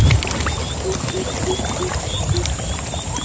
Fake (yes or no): no